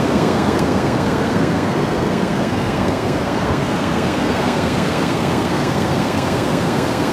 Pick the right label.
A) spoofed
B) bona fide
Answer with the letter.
A